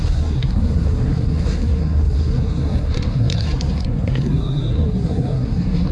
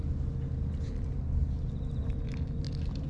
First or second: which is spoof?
first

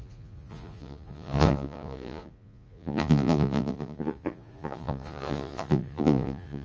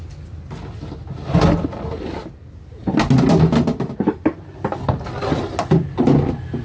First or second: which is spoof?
first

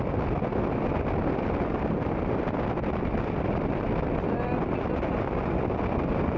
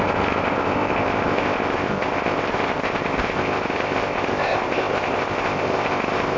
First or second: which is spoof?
second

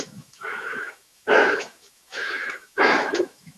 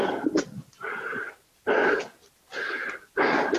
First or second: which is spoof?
first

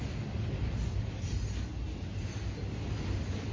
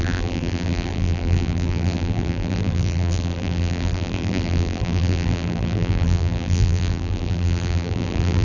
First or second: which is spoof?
second